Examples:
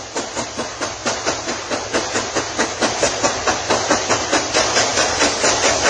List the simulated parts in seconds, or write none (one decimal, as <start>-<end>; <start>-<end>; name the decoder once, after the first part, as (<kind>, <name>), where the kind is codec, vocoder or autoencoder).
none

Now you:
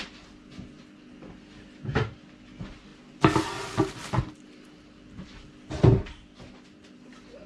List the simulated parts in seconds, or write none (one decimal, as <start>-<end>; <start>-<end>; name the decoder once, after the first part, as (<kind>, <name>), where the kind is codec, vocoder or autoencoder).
none

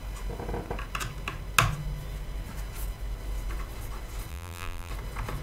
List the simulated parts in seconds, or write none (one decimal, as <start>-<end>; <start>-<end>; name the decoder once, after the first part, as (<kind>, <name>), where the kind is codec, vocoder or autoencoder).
4.3-4.9 (vocoder, BigVGAN v2)

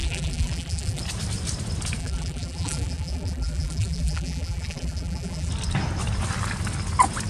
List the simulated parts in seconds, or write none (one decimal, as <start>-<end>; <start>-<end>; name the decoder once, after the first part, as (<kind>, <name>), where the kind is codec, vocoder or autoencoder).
0.0-1.0 (vocoder, BigVGAN v2); 2.0-5.5

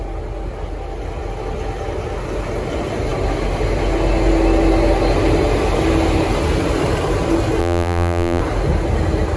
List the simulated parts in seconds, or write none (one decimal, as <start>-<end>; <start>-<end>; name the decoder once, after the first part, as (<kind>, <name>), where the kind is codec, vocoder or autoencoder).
7.6-8.4 (vocoder, BigVGAN v2)

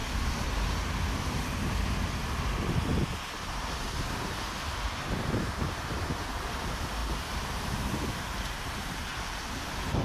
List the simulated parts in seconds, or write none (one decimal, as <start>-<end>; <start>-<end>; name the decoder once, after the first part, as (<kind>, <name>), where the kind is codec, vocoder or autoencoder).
5.2-10.0 (vocoder, BigVGAN v2)

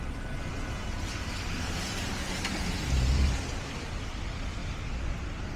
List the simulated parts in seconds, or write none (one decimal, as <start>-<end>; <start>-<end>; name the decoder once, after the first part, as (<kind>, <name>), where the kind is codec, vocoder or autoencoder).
0.5-3.9 (vocoder, BigVGAN v2)

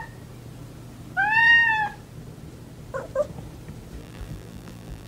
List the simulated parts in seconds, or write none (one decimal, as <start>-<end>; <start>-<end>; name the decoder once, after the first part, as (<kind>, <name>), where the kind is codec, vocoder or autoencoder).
4.0-5.1 (vocoder, BigVGAN v2)